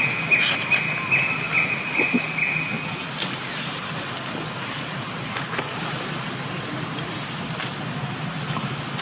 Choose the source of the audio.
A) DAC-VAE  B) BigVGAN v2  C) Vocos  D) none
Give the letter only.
D